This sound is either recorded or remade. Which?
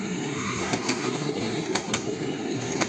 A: remade